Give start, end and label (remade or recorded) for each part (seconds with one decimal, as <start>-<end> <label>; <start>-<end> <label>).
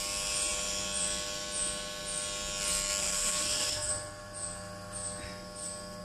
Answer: 0.0-3.0 recorded; 3.0-3.9 remade; 3.9-6.0 recorded